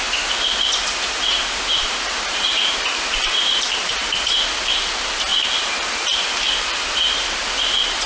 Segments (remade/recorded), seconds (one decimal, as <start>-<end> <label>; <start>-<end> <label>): 0.0-1.8 recorded; 1.8-3.9 remade; 3.9-5.3 recorded; 5.3-6.4 remade; 6.4-8.1 recorded